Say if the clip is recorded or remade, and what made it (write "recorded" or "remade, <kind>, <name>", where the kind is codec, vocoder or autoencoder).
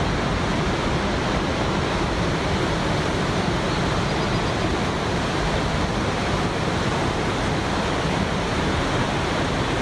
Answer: recorded